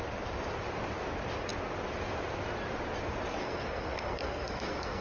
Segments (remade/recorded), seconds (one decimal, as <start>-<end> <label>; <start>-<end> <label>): 0.0-3.4 recorded; 3.4-5.0 remade